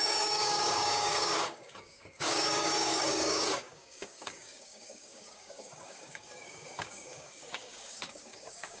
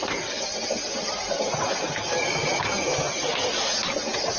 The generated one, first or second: first